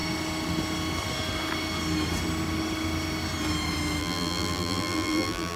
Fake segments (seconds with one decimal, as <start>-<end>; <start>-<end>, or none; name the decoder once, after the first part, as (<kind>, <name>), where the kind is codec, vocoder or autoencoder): 4.0-5.6 (vocoder, BigVGAN v2)